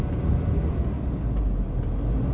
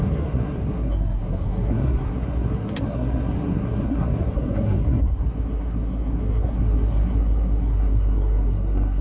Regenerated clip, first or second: second